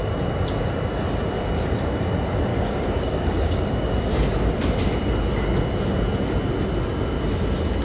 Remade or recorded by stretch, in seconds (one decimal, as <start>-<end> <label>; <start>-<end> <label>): 0.0-2.5 recorded; 2.5-3.9 remade; 3.9-7.8 recorded